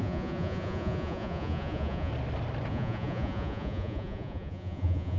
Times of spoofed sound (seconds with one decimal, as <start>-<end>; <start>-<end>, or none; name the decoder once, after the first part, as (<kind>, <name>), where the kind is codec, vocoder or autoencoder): 0.0-2.1 (vocoder, Vocos); 2.7-5.2